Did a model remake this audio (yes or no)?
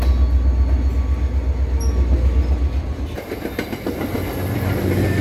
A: no